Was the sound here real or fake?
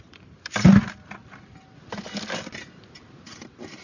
real